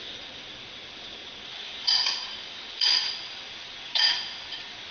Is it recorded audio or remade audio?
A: remade